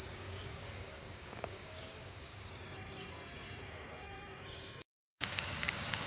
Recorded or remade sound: remade